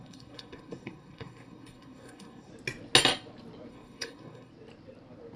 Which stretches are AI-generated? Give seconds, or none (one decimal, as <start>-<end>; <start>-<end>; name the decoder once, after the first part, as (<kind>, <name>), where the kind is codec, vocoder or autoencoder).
0.0-2.5 (codec, SNAC); 3.7-4.5